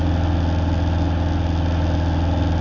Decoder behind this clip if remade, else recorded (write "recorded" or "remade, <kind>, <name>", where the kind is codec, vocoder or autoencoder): recorded